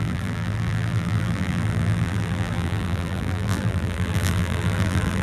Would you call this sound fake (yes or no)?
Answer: yes